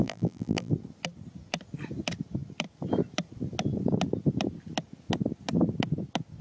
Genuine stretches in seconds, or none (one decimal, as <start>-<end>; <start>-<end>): 0.7-6.4